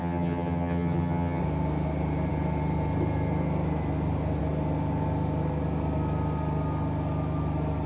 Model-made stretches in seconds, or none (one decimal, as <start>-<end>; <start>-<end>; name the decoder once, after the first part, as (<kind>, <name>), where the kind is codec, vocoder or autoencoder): 0.0-1.4 (vocoder, HiFi-GAN)